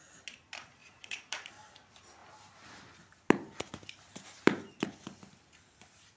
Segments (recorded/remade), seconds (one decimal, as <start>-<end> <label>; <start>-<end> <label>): 0.0-0.8 recorded; 0.8-1.5 remade; 1.5-6.2 recorded